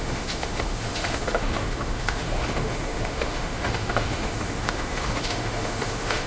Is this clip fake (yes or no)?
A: yes